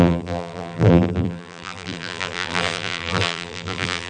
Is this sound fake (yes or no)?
yes